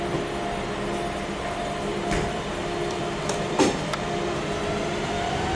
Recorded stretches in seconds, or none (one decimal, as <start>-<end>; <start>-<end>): 0.0-1.9